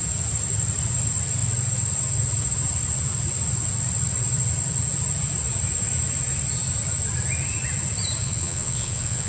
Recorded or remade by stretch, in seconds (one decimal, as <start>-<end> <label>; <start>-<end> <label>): 0.0-8.2 recorded; 8.2-9.3 remade